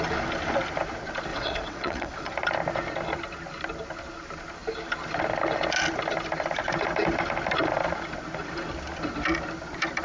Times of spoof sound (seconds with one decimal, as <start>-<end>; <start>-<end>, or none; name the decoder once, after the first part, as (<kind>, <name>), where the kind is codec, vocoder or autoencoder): 1.3-2.3 (vocoder, WaveNeXt)

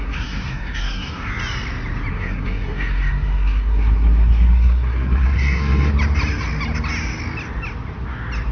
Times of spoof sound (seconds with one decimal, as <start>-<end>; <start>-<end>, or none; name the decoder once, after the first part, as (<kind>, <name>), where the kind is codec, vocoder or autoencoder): 0.0-1.3 (codec, SNAC); 2.1-5.9